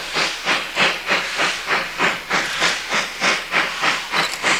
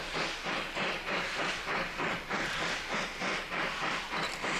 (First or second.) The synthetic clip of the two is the second